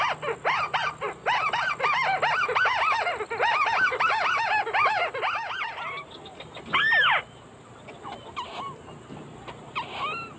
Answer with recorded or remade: recorded